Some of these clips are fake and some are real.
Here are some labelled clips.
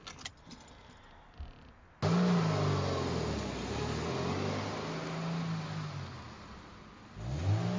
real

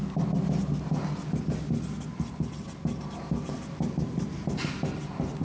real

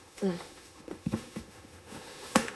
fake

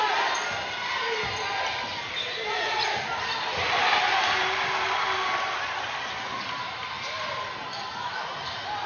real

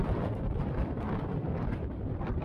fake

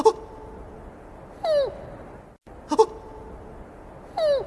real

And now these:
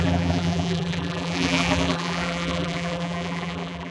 fake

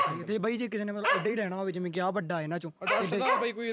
fake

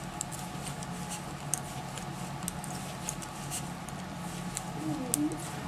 real